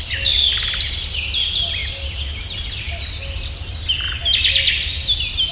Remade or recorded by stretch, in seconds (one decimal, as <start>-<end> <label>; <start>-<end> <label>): 0.0-5.5 recorded